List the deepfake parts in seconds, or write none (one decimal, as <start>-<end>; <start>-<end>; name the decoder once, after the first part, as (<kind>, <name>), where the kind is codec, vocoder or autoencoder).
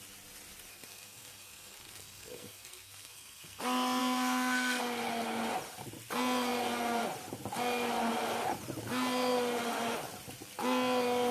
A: 0.7-3.6 (codec, SNAC); 4.0-4.8